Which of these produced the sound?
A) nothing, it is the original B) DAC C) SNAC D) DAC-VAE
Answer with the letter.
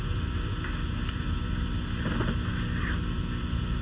A